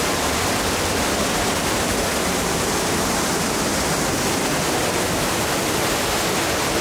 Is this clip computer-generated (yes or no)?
no